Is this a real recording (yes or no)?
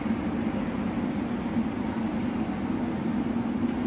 yes